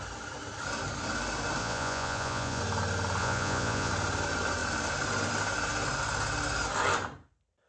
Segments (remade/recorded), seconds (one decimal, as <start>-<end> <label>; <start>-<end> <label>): 0.0-1.6 recorded; 1.6-2.6 remade; 2.6-3.2 recorded; 3.2-3.9 remade; 3.9-7.7 recorded